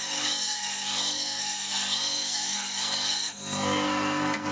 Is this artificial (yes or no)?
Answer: yes